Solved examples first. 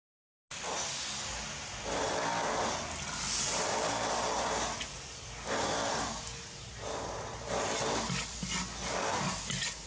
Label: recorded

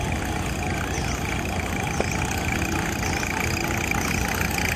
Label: recorded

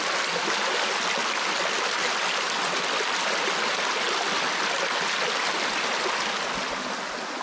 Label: recorded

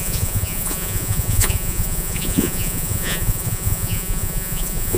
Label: remade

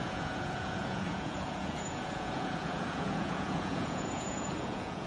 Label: remade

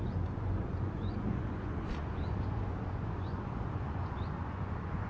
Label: remade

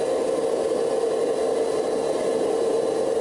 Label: recorded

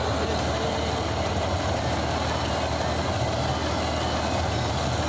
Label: recorded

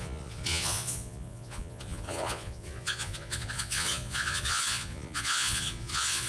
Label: remade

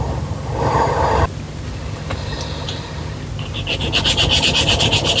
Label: recorded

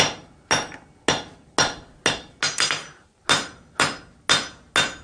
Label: recorded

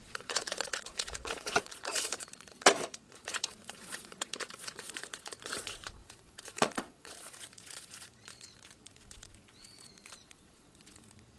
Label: remade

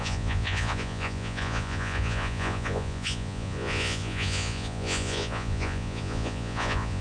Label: remade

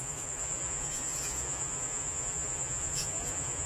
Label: remade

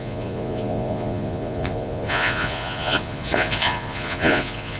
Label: remade